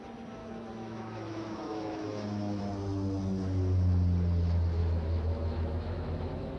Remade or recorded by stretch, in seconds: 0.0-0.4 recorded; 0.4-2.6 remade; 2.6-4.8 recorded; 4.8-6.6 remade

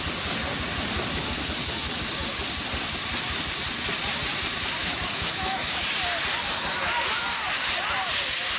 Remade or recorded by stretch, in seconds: 0.0-4.8 recorded; 4.8-5.8 remade; 5.8-8.6 recorded

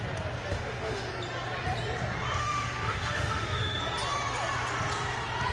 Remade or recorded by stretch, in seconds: 0.0-0.5 recorded; 0.5-1.1 remade; 1.1-2.4 recorded; 2.4-3.8 remade; 3.8-5.5 recorded

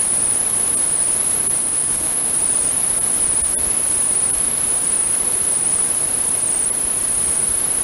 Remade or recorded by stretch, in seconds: 0.0-1.6 recorded; 1.6-2.3 remade; 2.3-7.8 recorded

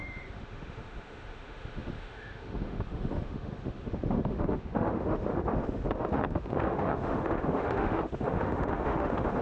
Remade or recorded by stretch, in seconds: 0.0-9.4 remade

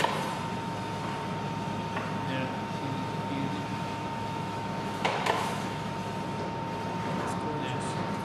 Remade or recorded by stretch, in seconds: 0.0-3.7 recorded; 3.7-5.9 remade; 5.9-8.2 recorded

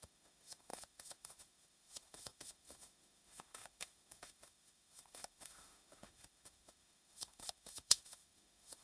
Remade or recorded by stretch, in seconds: 0.0-8.8 remade